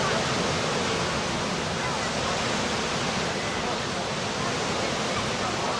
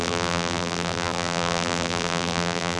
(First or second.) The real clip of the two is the first